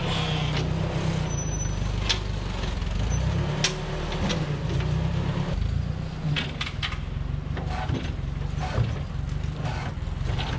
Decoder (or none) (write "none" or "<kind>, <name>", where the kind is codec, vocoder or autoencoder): none